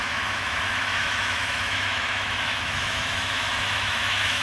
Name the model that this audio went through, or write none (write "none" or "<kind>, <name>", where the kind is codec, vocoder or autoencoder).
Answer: autoencoder, DAC-VAE